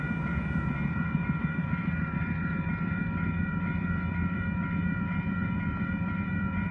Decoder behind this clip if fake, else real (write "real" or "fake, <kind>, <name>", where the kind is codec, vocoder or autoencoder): fake, vocoder, BigVGAN v2